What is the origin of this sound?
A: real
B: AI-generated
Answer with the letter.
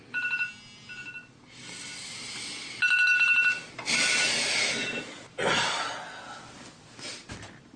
A